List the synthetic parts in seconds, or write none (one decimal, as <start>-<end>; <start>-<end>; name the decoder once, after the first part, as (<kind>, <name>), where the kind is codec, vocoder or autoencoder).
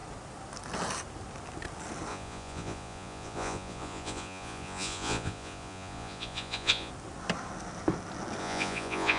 2.1-6.9 (vocoder, Vocos); 8.4-9.2